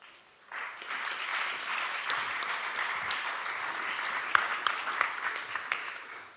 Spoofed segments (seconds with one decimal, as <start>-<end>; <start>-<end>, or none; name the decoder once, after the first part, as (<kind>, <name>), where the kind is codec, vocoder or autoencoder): 5.8-6.4 (autoencoder, DAC-VAE)